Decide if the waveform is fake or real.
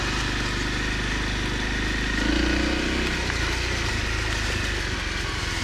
real